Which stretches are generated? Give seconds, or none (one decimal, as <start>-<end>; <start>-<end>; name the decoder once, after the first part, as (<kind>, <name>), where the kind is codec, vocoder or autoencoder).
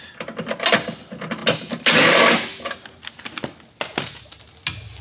none